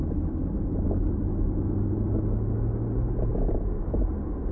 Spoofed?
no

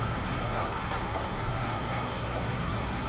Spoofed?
yes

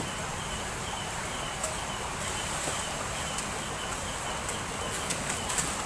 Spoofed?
no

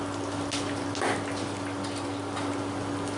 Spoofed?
no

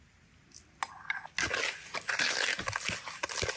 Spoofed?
no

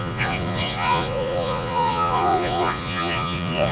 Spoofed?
yes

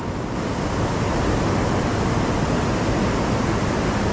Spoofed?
no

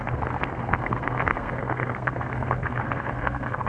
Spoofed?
yes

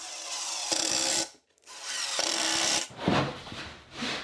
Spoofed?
yes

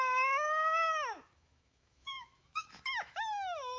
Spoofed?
yes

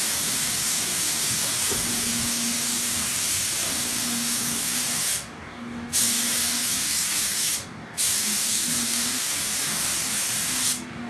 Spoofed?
yes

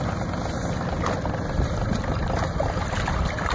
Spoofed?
no